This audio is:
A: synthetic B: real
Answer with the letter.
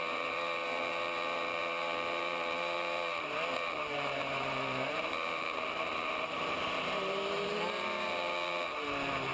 A